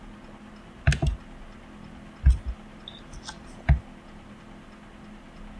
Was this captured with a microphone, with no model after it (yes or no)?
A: yes